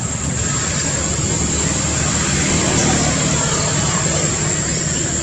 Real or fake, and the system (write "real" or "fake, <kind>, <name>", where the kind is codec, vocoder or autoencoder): real